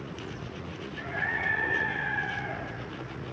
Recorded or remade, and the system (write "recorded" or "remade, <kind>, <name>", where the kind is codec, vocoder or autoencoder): remade, vocoder, Vocos